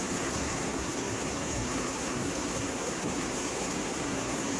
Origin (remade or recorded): remade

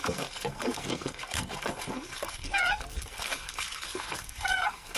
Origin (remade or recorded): remade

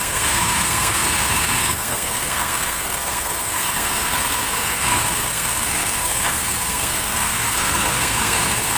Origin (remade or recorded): remade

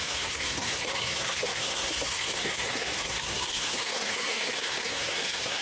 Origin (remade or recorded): remade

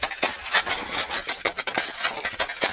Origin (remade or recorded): recorded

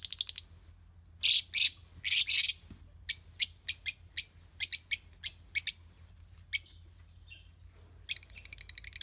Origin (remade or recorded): recorded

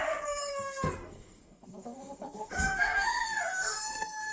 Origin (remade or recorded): remade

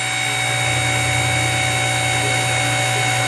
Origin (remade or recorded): recorded